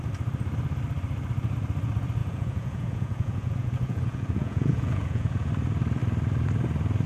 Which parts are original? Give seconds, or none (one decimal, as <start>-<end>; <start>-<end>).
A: 0.0-2.2; 5.5-7.1